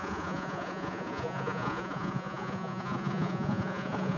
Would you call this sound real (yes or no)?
no